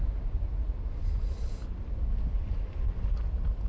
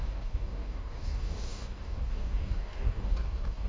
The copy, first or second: second